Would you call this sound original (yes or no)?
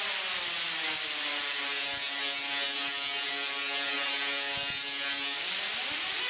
yes